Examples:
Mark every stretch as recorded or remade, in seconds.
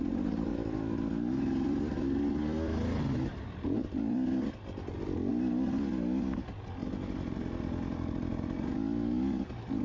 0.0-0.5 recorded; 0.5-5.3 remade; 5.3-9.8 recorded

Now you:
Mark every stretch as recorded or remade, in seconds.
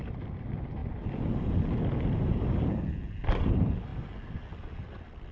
0.0-5.3 recorded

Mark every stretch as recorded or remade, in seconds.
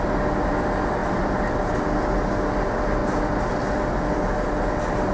0.0-1.0 recorded; 1.0-1.8 remade; 1.8-5.1 recorded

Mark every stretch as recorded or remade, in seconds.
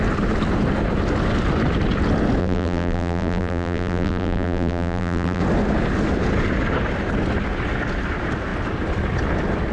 0.0-2.4 recorded; 2.4-5.4 remade; 5.4-9.7 recorded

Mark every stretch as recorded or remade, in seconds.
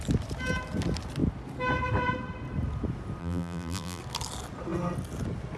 0.0-3.2 recorded; 3.2-4.0 remade; 4.0-5.6 recorded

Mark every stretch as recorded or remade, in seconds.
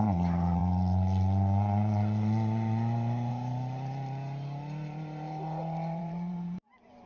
0.0-0.6 remade; 0.6-3.3 recorded; 3.3-7.1 remade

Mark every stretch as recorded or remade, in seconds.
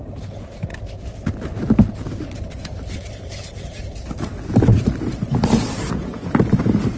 0.0-0.7 remade; 0.7-2.6 recorded; 2.6-7.0 remade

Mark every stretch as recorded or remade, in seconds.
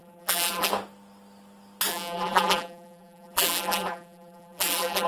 0.0-0.7 remade; 0.7-1.9 recorded; 1.9-5.1 remade